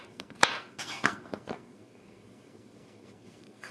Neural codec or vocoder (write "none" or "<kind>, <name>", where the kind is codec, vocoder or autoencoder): codec, SNAC